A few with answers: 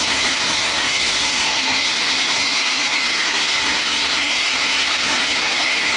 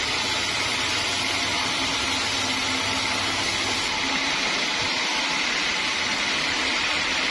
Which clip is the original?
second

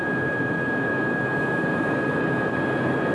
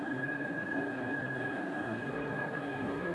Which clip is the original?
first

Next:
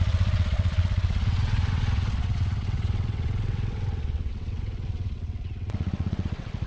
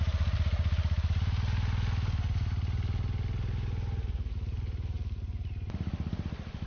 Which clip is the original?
second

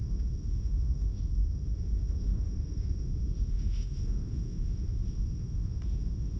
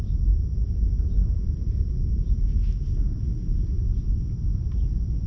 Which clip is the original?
second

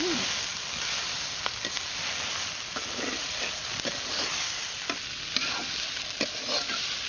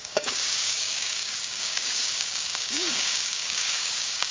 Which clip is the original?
first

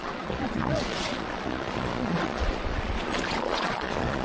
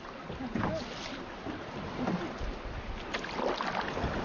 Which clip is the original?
second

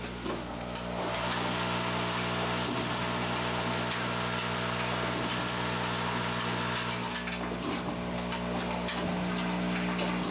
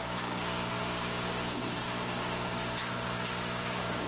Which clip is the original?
first